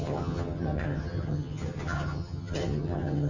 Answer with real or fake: fake